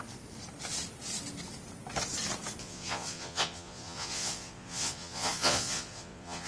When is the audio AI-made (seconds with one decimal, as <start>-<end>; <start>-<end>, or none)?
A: 2.6-6.5